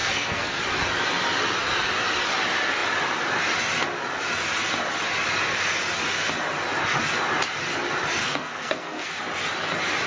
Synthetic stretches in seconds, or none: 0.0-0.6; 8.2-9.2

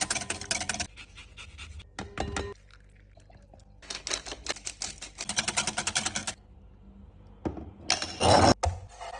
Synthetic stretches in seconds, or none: none

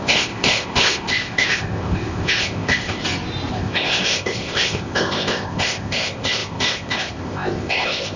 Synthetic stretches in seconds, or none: 0.0-3.0; 3.5-8.2

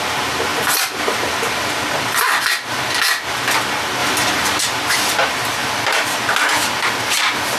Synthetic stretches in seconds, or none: 0.5-1.8; 4.0-4.6; 5.6-6.2